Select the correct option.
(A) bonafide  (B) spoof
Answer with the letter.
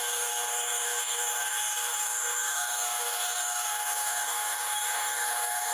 B